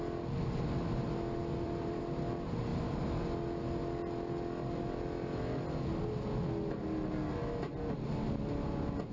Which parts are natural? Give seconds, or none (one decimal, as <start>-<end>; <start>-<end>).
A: 0.0-1.4; 2.0-9.1